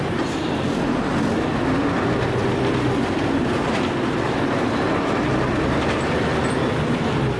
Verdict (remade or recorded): remade